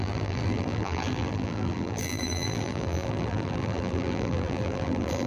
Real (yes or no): no